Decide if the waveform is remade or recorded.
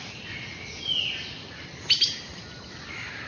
recorded